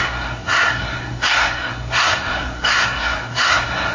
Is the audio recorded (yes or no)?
no